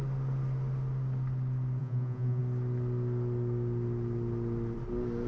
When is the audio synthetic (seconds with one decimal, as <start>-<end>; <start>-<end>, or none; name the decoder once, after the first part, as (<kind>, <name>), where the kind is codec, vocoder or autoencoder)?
1.8-2.4 (vocoder, Vocos)